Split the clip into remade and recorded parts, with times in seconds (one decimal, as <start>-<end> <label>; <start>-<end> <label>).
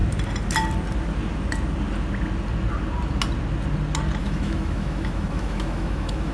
0.0-4.2 recorded; 4.2-6.3 remade